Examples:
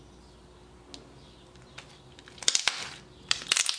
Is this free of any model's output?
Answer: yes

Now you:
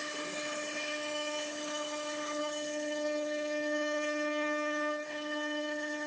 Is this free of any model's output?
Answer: no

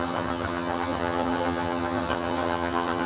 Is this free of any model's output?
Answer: no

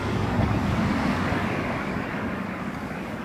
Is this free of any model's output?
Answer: no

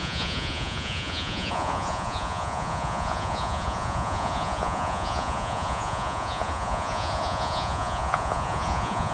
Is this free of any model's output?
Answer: no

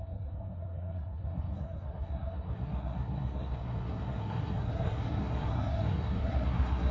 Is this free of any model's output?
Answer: no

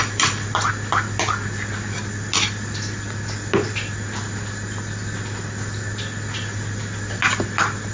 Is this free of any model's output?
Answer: yes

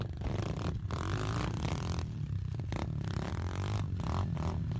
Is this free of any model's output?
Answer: yes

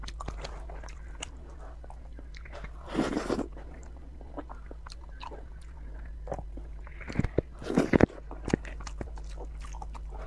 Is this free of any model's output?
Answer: yes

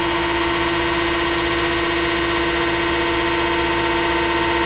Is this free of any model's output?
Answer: yes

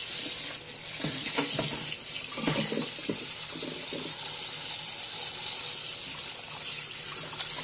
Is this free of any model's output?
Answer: yes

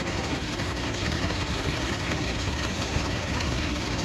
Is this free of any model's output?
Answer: no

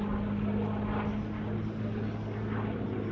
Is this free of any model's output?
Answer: yes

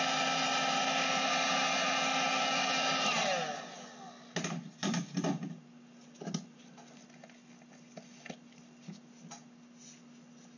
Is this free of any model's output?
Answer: yes